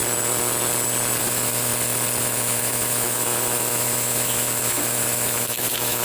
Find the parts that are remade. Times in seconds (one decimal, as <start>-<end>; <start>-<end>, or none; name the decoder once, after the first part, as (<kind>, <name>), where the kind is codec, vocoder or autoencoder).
1.2-1.7 (autoencoder, DAC-VAE); 2.2-6.0